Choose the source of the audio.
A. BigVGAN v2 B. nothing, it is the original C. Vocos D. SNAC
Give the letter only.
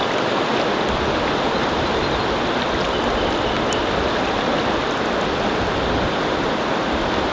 B